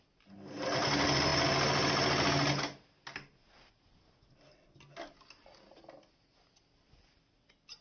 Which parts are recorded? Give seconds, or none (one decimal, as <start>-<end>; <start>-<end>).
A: 0.0-7.8